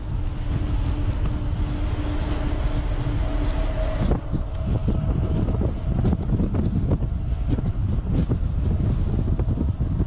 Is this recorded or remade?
recorded